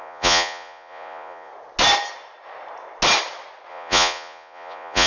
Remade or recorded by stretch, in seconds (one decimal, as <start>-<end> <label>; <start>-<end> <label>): 0.0-1.5 remade; 1.5-3.7 recorded; 3.7-5.1 remade